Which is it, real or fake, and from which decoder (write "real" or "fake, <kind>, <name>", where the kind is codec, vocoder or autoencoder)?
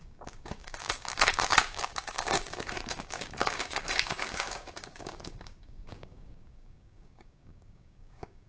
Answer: fake, codec, DAC